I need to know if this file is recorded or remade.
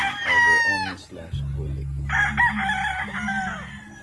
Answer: recorded